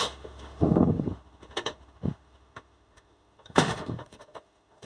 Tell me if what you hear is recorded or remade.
remade